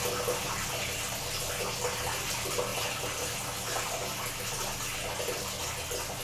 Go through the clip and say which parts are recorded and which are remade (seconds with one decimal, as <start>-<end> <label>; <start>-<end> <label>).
0.0-6.2 recorded